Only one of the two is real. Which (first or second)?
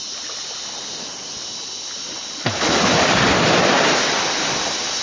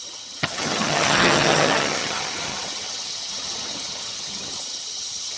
first